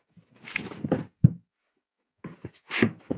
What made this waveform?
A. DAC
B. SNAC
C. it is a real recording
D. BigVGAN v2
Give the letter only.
C